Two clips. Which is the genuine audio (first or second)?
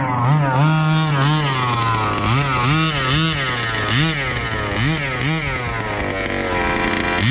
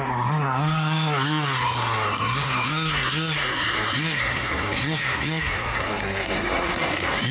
first